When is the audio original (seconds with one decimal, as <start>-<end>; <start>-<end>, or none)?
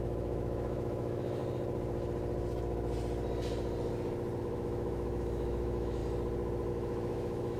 1.4-4.4; 6.0-6.7